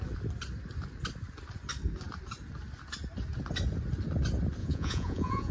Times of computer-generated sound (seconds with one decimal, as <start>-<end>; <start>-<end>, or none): 4.6-5.5